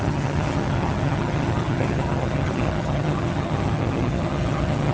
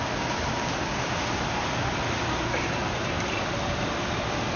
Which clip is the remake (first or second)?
first